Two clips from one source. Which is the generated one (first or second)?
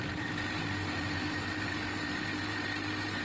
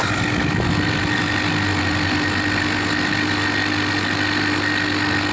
first